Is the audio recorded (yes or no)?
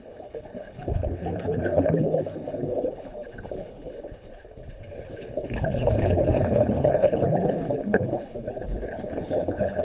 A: no